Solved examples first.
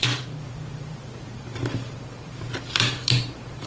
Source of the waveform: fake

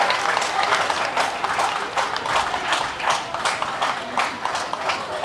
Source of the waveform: real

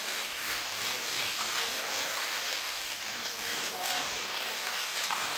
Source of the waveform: fake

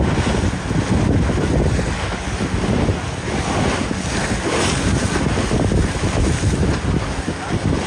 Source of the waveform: real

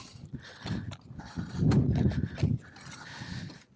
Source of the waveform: real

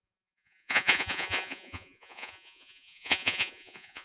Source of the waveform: fake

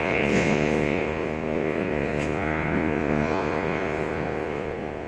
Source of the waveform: fake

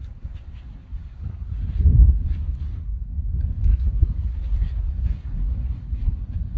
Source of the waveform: fake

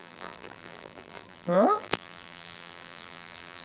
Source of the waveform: fake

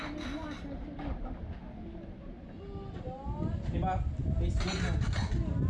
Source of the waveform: real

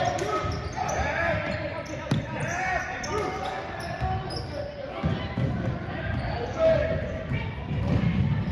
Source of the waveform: real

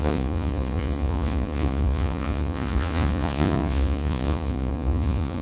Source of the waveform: fake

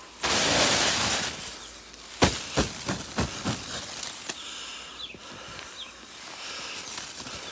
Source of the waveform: real